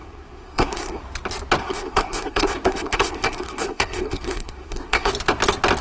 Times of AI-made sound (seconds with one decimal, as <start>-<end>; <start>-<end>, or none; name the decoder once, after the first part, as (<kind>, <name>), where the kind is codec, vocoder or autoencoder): 0.0-1.0 (codec, SNAC); 1.6-5.1